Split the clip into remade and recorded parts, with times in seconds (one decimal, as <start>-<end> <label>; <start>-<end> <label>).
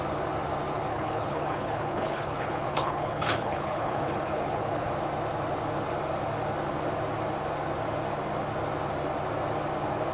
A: 0.0-0.9 recorded; 0.9-4.9 remade; 4.9-10.1 recorded